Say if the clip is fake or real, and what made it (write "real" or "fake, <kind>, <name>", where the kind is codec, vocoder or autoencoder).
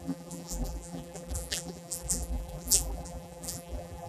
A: fake, vocoder, BigVGAN v2